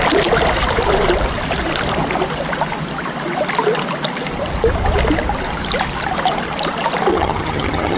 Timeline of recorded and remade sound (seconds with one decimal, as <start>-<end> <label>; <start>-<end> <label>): 0.0-7.1 recorded; 7.1-8.0 remade